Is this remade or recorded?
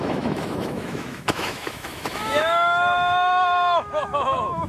remade